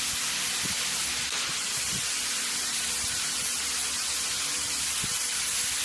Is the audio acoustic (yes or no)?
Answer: yes